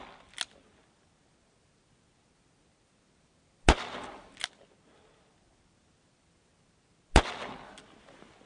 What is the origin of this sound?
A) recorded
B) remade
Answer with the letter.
A